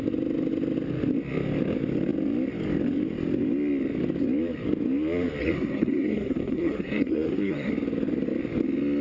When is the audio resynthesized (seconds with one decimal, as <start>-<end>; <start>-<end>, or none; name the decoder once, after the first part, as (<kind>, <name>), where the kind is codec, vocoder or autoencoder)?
5.4-7.7 (codec, SNAC)